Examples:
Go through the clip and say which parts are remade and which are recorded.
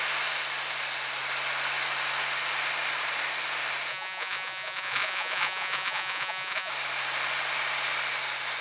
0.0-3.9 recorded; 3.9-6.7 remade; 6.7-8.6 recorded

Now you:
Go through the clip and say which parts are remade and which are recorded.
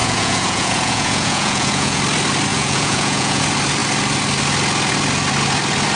0.0-2.0 remade; 2.0-2.5 recorded; 2.5-3.4 remade; 3.4-6.0 recorded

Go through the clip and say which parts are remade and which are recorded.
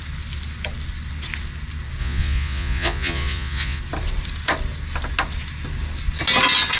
0.0-2.0 recorded; 2.0-3.8 remade; 3.8-6.8 recorded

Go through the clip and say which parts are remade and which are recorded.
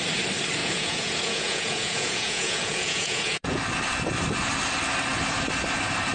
0.0-0.6 recorded; 0.6-3.6 remade; 3.6-6.1 recorded